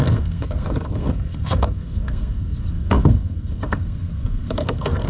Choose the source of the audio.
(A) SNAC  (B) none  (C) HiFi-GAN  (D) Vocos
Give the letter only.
A